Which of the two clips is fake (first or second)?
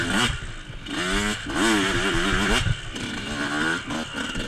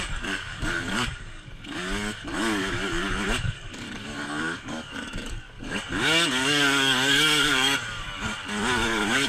second